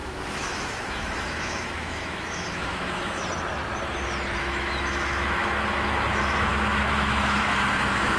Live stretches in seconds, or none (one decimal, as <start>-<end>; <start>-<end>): 3.2-4.4